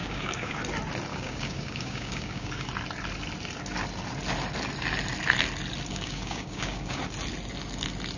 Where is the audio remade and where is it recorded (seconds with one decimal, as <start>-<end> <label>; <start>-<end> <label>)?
0.0-0.6 remade; 0.6-1.1 recorded; 1.1-2.7 remade; 2.7-5.9 recorded; 5.9-7.0 remade; 7.0-8.2 recorded